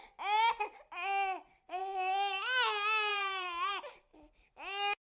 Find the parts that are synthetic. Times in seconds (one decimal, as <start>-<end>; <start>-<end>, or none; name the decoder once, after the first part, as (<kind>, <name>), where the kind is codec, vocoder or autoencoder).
3.1-3.7 (vocoder, BigVGAN v2)